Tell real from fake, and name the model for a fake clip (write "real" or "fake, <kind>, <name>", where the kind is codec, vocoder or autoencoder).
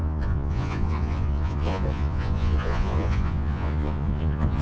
fake, vocoder, Vocos